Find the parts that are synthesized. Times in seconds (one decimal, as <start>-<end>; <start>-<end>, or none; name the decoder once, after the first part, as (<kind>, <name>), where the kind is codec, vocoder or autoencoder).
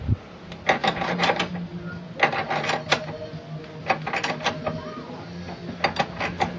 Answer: 0.8-1.4 (vocoder, BigVGAN v2)